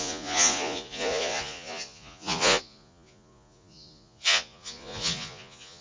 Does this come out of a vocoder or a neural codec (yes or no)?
yes